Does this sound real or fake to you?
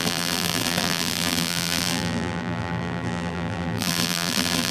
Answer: fake